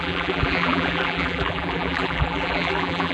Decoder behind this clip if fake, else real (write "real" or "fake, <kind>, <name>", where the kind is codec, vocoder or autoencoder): fake, vocoder, BigVGAN v2